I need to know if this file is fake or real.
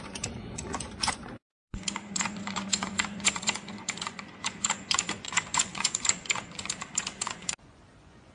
fake